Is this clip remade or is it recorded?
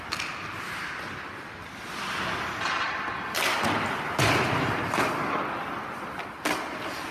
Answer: recorded